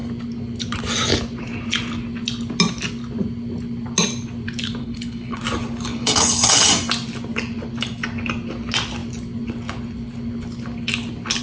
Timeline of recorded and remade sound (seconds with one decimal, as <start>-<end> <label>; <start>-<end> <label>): 0.0-4.8 recorded; 4.8-5.4 remade; 5.4-5.9 recorded; 5.9-6.7 remade; 6.7-11.4 recorded